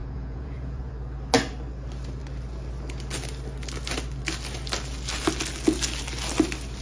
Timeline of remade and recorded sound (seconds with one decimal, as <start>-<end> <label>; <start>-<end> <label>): 0.0-0.9 remade; 0.9-6.8 recorded